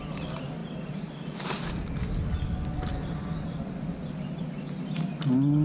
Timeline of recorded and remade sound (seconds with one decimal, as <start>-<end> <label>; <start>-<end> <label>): 0.0-5.6 recorded